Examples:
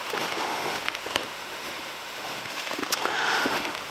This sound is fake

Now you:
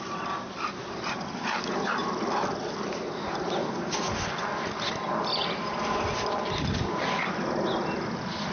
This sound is real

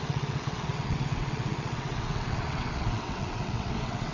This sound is fake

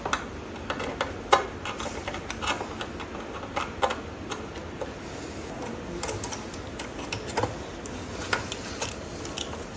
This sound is real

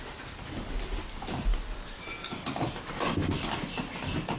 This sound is real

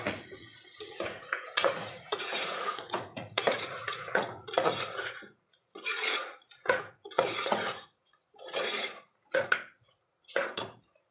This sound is fake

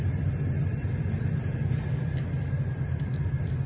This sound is real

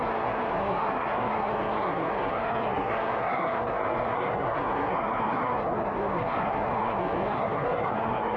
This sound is fake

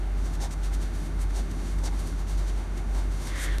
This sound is fake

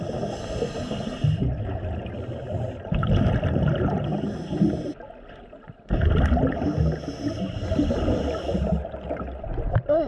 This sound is real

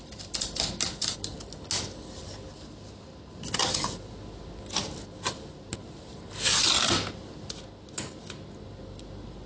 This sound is real